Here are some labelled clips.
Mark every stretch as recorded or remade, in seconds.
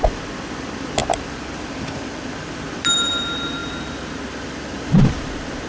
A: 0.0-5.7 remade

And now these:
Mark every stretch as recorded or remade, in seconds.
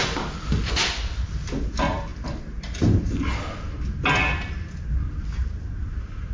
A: 0.0-6.3 recorded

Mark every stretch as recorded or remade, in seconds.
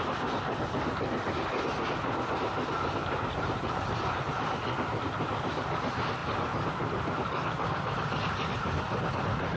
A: 0.0-3.0 recorded; 3.0-4.3 remade; 4.3-9.6 recorded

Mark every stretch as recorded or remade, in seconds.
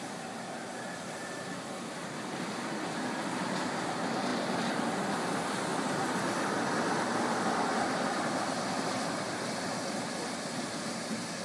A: 0.0-11.4 recorded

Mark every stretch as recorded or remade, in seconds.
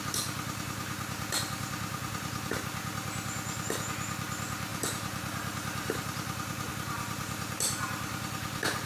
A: 0.0-4.7 recorded; 4.7-6.7 remade; 6.7-8.9 recorded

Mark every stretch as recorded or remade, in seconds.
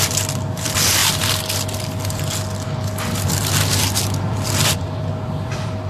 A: 0.0-1.0 remade; 1.0-4.3 recorded; 4.3-5.9 remade